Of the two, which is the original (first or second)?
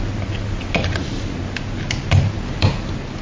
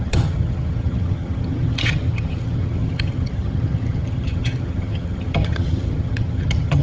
first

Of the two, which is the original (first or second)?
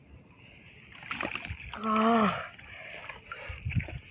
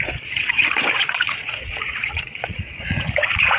first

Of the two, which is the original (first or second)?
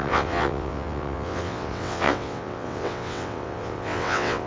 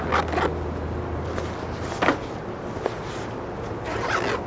second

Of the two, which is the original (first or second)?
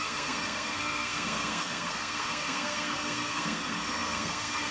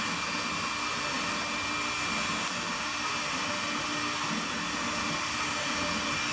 second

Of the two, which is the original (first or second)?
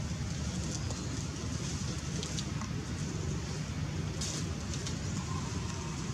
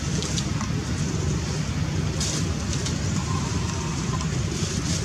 first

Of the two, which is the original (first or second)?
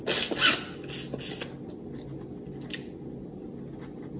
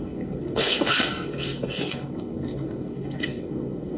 first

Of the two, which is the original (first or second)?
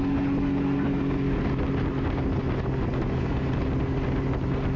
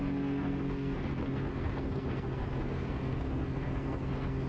first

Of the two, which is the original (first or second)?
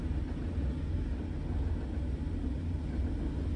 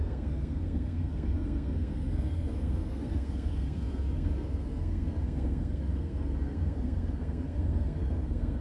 first